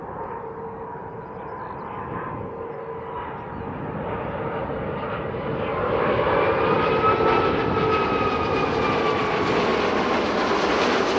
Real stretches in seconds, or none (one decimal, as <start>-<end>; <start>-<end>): 0.0-11.2